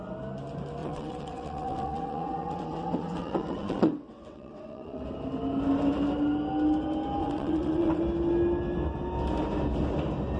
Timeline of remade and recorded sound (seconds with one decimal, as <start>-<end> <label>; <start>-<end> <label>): 0.0-0.8 recorded; 0.8-5.0 remade; 5.0-7.2 recorded; 7.2-8.0 remade; 8.0-10.4 recorded